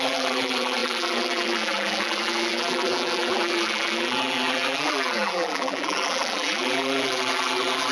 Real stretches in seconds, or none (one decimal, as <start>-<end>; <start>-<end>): none